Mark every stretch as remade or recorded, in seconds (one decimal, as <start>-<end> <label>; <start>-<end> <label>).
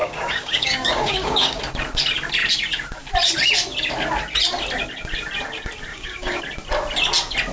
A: 0.0-1.6 remade; 1.6-5.9 recorded; 5.9-6.4 remade; 6.4-7.5 recorded